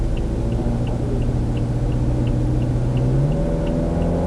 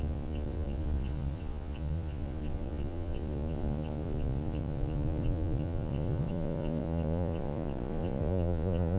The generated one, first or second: second